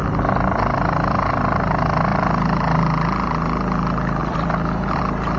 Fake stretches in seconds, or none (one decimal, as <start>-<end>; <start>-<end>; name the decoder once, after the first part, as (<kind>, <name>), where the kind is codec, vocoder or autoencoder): 2.1-2.8 (vocoder, BigVGAN v2); 4.2-5.0